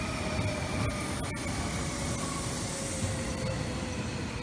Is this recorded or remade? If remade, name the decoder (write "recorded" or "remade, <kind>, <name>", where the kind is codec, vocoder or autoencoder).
recorded